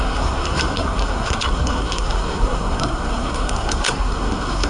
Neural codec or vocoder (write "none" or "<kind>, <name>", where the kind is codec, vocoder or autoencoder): codec, SNAC